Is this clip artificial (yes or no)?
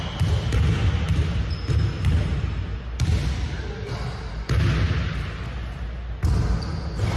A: no